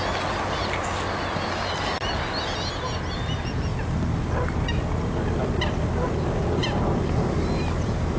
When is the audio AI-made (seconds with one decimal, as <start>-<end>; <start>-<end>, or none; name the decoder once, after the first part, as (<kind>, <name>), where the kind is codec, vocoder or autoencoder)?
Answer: none